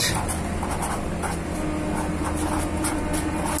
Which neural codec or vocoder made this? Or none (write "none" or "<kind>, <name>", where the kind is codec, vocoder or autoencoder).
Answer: none